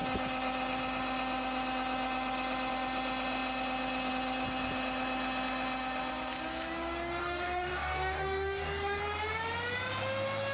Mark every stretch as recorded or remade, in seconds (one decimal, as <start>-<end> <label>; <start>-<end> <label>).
0.0-7.2 recorded; 7.2-9.0 remade; 9.0-10.5 recorded